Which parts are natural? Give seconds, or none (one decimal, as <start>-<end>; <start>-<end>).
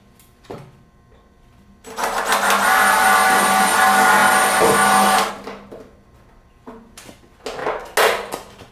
0.0-8.7